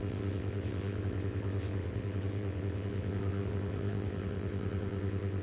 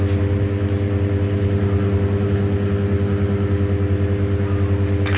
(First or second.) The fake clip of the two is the first